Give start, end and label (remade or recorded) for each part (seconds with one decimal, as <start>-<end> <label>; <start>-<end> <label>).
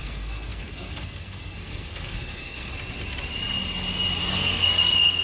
0.0-2.7 remade; 2.7-4.3 recorded; 4.3-5.2 remade